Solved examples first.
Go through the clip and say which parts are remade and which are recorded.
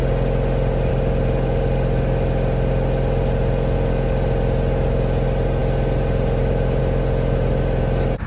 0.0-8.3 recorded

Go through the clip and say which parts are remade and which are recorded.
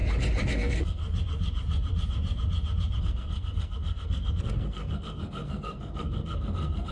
0.0-0.5 recorded; 0.5-1.0 remade; 1.0-3.0 recorded; 3.0-6.9 remade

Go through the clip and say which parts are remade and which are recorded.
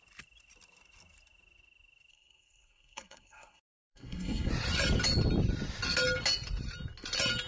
0.0-2.1 recorded; 2.1-4.5 remade; 4.5-7.5 recorded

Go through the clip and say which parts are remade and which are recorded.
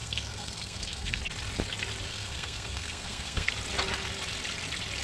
0.0-1.2 remade; 1.2-2.1 recorded; 2.1-3.5 remade; 3.5-5.0 recorded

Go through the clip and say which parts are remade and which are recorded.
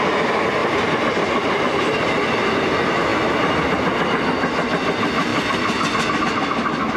0.0-7.0 recorded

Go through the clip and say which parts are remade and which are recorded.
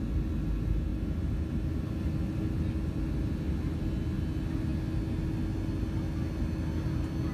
0.0-7.3 recorded